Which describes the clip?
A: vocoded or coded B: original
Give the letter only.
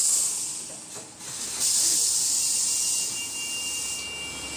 B